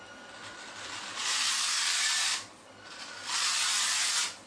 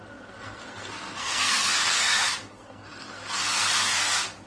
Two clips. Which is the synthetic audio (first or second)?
second